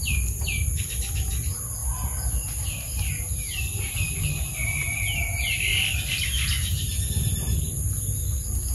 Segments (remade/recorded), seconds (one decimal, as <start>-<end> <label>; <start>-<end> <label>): 0.0-8.7 recorded